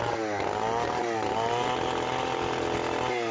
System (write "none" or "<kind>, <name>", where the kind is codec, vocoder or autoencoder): none